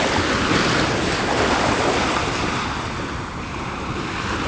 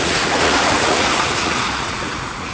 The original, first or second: first